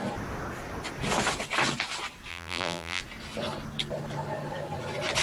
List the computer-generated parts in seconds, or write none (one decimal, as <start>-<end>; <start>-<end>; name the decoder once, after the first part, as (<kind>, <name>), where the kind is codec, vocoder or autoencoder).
2.3-3.0 (vocoder, BigVGAN v2)